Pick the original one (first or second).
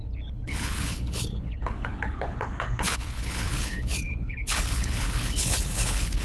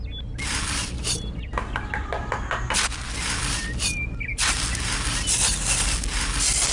second